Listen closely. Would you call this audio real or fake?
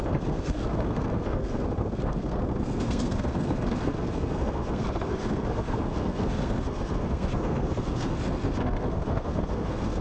fake